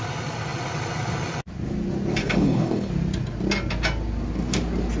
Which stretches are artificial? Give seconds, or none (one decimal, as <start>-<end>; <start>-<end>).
2.2-2.9